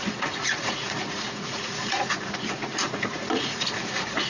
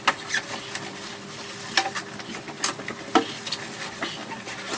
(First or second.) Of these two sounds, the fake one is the first